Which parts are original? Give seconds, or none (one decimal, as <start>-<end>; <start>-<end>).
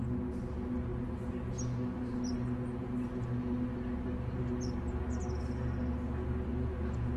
0.0-6.5